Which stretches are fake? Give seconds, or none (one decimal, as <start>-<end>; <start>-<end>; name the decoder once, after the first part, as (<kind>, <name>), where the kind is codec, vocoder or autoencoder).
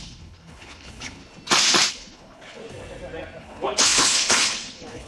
0.0-1.2 (codec, HILCodec); 1.9-2.6; 3.4-5.1